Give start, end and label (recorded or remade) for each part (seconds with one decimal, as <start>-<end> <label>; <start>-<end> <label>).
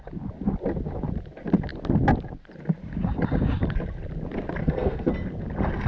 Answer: 0.0-4.6 recorded; 4.6-5.1 remade; 5.1-5.9 recorded